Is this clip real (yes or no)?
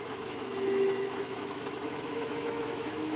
no